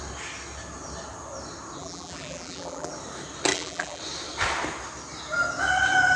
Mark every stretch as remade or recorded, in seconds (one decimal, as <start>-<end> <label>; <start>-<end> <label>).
0.0-1.8 recorded; 1.8-2.9 remade; 2.9-3.5 recorded; 3.5-4.0 remade; 4.0-6.2 recorded

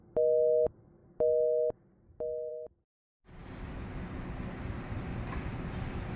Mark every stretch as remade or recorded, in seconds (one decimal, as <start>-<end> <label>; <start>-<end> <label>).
0.0-6.2 recorded